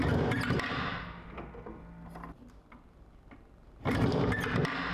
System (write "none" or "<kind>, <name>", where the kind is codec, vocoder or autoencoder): none